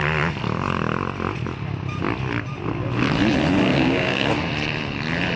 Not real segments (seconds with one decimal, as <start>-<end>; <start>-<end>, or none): 3.7-4.3